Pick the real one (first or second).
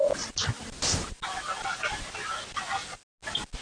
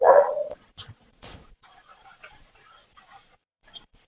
first